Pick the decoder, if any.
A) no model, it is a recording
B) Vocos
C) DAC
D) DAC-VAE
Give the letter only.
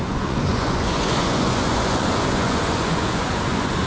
B